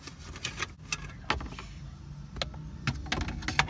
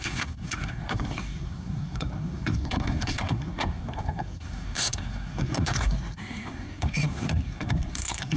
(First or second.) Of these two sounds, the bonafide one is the first